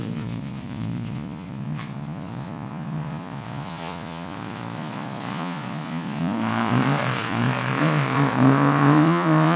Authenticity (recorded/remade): remade